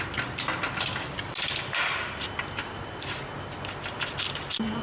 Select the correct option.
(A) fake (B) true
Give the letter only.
B